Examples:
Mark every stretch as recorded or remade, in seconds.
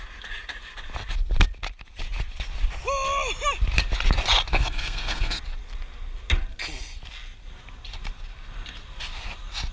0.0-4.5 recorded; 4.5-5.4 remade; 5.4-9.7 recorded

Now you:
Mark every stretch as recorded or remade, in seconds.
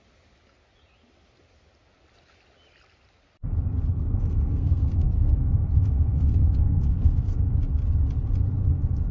0.0-3.9 recorded; 3.9-7.5 remade; 7.5-9.1 recorded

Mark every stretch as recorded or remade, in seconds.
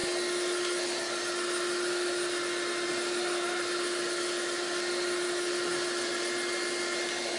0.0-7.4 recorded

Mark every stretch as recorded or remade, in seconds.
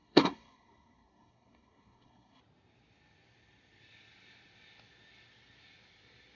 0.0-2.4 remade; 2.4-6.3 recorded